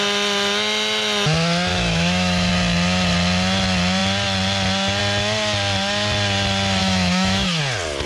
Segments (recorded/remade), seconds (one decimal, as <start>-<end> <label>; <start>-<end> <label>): 0.0-1.7 recorded; 1.7-2.5 remade; 2.5-6.8 recorded; 6.8-7.6 remade; 7.6-8.1 recorded